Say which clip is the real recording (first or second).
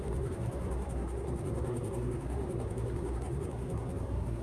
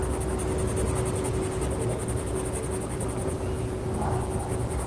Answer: second